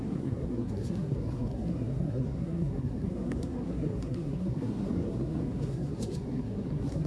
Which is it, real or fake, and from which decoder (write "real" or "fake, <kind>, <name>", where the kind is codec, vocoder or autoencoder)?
fake, codec, SNAC